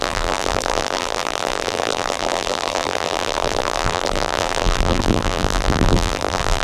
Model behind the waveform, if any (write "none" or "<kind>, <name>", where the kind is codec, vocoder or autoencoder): vocoder, BigVGAN v2